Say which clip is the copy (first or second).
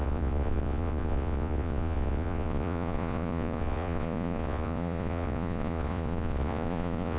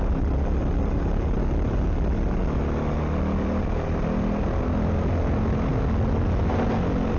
first